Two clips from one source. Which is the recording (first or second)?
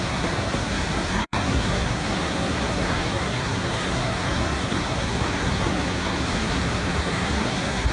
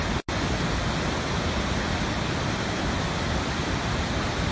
second